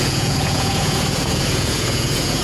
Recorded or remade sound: remade